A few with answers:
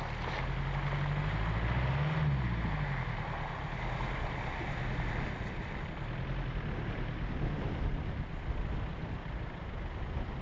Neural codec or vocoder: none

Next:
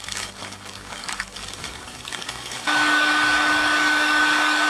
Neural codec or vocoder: codec, DAC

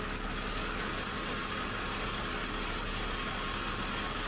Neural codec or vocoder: codec, DAC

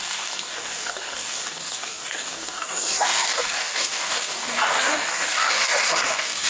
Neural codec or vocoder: codec, DAC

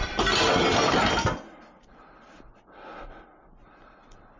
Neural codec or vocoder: none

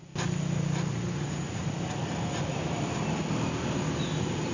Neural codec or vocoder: none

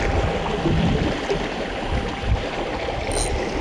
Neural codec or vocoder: none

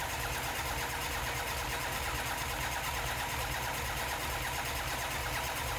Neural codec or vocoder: none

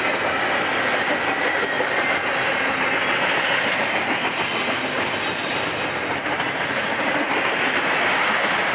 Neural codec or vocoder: none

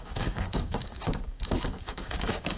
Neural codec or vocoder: codec, DAC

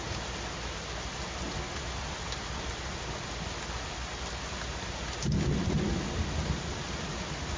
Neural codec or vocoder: none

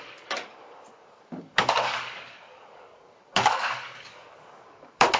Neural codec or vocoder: codec, DAC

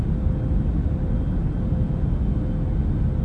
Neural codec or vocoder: none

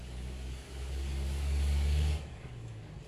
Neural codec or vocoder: codec, DAC